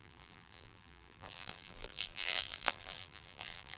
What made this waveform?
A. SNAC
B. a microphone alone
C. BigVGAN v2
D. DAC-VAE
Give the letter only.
C